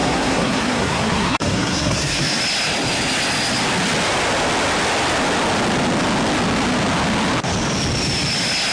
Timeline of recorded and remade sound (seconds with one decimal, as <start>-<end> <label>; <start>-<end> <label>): 0.0-2.4 remade; 2.4-8.7 recorded